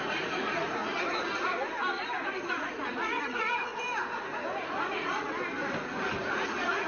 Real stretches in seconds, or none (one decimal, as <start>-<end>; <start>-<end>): 0.8-2.3; 3.7-4.6; 5.3-6.3